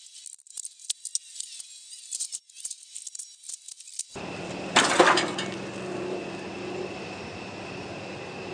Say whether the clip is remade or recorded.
recorded